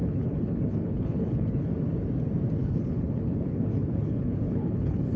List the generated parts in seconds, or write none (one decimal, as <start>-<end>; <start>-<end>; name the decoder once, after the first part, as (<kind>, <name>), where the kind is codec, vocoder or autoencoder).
0.0-1.7 (codec, HILCodec); 2.6-5.2